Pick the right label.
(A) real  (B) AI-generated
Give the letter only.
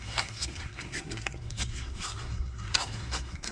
B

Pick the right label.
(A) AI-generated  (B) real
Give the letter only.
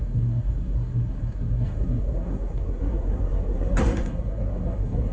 A